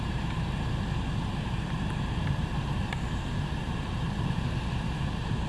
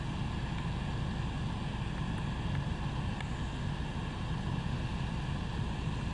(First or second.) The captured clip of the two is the second